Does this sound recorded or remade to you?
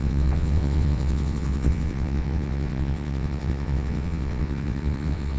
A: remade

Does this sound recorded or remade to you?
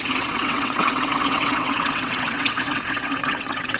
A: remade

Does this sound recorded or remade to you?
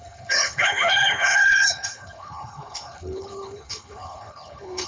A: remade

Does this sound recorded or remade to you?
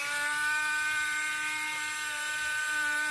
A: recorded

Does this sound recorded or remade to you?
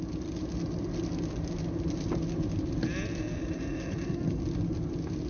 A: recorded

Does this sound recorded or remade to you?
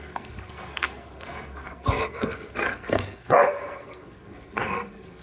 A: remade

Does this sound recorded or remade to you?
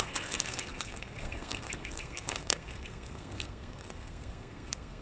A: remade